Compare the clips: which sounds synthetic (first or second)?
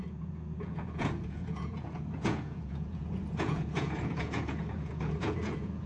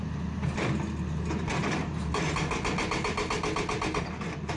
first